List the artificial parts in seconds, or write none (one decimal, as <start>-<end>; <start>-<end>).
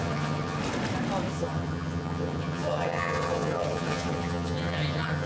0.0-0.6; 1.3-5.3